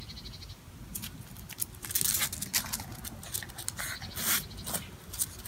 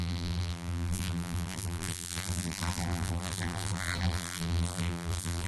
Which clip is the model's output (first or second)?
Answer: second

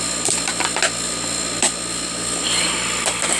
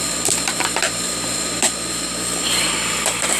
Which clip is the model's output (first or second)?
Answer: second